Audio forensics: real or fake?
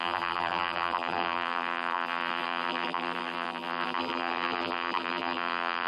fake